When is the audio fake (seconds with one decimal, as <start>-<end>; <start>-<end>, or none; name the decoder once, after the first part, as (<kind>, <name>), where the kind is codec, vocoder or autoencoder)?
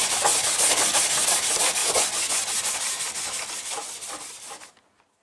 1.8-2.5 (vocoder, Vocos)